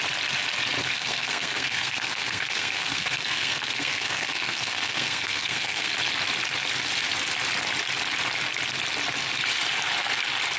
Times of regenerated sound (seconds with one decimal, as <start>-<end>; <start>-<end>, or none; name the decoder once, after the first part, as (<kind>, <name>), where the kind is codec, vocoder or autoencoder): 0.8-5.9 (codec, SNAC)